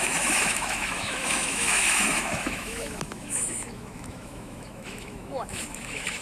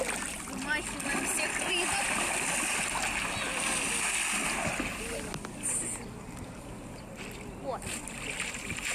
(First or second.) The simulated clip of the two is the first